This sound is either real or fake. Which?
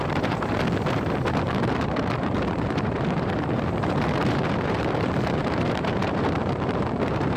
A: fake